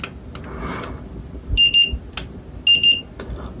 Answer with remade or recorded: recorded